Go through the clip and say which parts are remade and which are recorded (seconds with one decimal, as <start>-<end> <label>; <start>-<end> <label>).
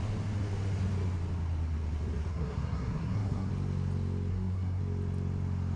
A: 0.0-2.3 recorded; 2.3-3.5 remade; 3.5-4.3 recorded; 4.3-4.8 remade; 4.8-5.8 recorded